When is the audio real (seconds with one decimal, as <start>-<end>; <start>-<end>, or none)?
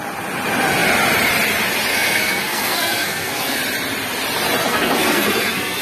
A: 0.0-1.9; 3.6-4.6